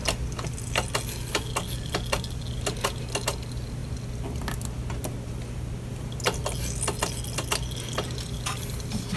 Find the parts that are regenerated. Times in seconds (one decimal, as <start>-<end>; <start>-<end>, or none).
none